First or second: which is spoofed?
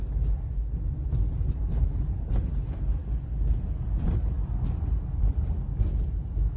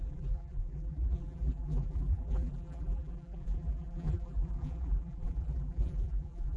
second